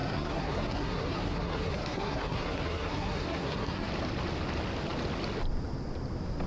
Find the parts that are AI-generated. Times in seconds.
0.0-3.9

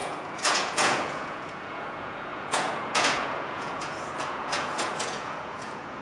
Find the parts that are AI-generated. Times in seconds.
0.0-6.0

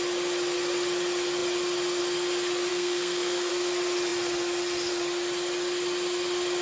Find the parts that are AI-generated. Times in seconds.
2.7-3.5

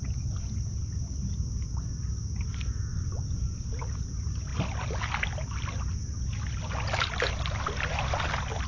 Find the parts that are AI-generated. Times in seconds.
2.9-3.4

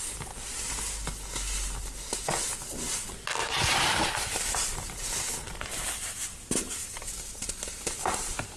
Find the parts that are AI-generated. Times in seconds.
3.4-8.6

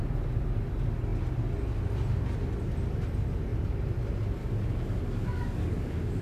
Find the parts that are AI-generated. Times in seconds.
4.4-6.2